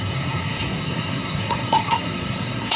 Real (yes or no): no